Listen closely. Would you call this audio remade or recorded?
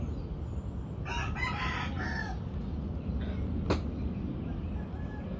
recorded